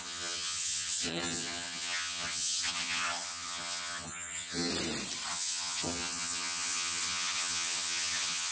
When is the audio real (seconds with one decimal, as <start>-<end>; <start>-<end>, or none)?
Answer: 4.7-5.3